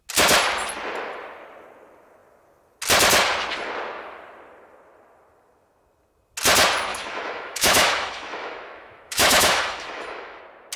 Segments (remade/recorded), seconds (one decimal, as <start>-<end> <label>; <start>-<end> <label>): 0.0-6.9 recorded; 6.9-10.4 remade; 10.4-10.8 recorded